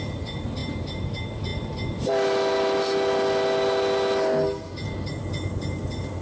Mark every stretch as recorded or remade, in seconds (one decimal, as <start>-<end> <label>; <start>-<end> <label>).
0.0-6.2 recorded